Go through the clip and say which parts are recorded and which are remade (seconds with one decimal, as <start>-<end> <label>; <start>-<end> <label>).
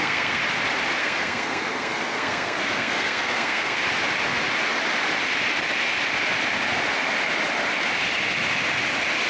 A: 0.0-0.4 remade; 0.4-1.0 recorded; 1.0-3.8 remade; 3.8-9.3 recorded